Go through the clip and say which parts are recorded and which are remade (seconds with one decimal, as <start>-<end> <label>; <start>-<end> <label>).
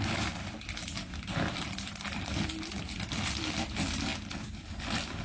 0.0-0.8 recorded; 0.8-1.9 remade; 1.9-5.2 recorded